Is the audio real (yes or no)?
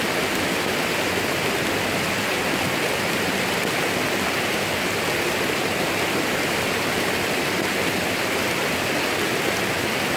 yes